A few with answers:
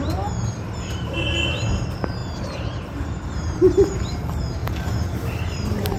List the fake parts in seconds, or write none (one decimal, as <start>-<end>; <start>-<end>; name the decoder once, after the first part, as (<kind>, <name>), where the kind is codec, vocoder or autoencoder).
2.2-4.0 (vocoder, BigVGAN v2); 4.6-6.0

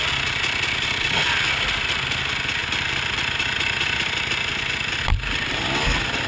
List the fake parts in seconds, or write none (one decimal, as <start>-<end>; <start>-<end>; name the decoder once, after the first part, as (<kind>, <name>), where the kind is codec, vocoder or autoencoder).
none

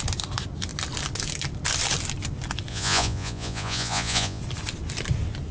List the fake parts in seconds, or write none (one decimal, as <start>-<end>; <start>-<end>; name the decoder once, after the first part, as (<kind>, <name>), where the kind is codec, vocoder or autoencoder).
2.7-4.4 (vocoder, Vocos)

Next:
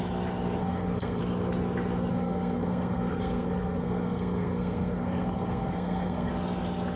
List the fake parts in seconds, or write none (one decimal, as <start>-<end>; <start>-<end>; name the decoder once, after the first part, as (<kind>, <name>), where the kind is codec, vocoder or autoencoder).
0.6-1.2 (codec, SNAC); 2.1-6.3

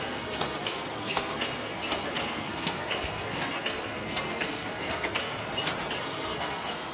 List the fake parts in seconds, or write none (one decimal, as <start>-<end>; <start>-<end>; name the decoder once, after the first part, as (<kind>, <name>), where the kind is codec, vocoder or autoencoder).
0.0-5.5 (codec, SNAC); 6.0-6.9

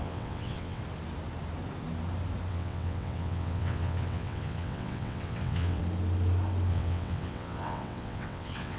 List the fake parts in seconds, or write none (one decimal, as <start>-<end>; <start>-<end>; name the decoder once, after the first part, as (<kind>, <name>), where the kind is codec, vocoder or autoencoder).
0.0-0.8 (vocoder, WaveNeXt); 2.5-5.8; 6.7-8.8